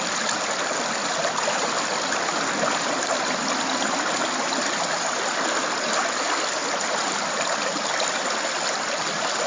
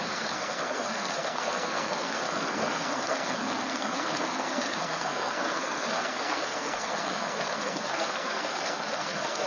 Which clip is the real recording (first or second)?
first